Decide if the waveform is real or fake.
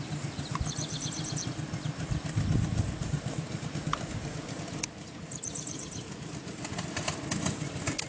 real